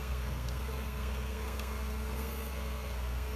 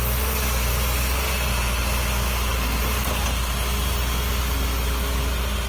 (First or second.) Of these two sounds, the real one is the second